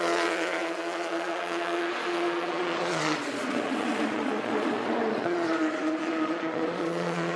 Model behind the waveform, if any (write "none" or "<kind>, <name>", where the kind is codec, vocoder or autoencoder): vocoder, Vocos